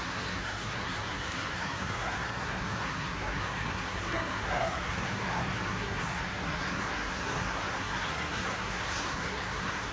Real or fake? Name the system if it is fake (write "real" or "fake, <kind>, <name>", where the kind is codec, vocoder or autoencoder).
fake, codec, SNAC